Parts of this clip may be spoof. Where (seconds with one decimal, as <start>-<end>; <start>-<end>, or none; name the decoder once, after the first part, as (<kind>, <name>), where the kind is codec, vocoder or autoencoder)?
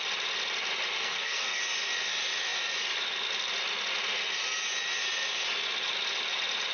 1.0-1.6 (codec, SNAC)